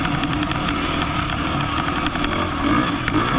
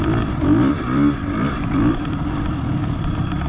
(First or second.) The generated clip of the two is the second